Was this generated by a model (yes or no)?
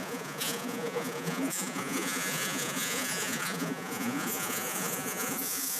yes